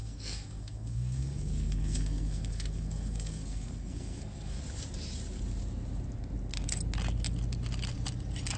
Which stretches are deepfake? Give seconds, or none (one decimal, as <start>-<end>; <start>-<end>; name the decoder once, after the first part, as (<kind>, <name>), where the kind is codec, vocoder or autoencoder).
0.0-4.6 (codec, SNAC)